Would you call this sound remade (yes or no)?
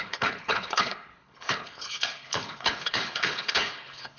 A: yes